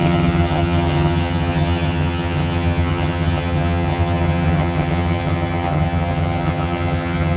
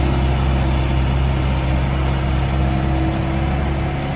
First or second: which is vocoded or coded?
first